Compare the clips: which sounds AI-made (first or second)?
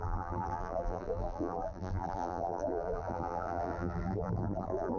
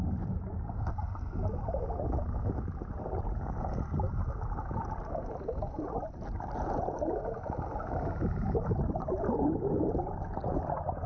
first